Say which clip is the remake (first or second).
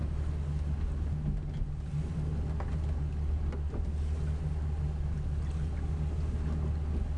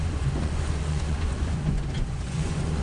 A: second